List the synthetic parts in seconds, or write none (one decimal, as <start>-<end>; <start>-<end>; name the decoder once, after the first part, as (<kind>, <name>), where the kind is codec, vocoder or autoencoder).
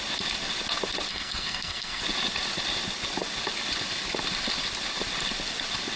1.1-2.0 (codec, SNAC)